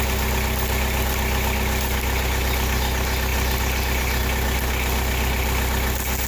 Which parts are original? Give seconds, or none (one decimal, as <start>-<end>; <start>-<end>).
0.0-6.3